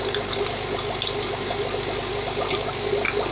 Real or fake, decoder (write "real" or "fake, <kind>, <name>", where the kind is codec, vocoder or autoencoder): real